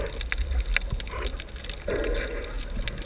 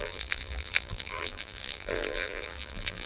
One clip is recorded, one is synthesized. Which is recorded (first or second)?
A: first